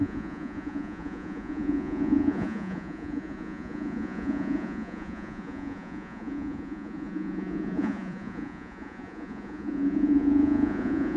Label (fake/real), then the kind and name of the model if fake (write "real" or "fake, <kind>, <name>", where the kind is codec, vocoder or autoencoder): fake, vocoder, Vocos